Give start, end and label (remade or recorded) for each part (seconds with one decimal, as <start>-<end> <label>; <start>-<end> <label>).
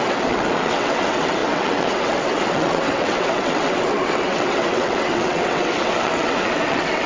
0.0-7.1 remade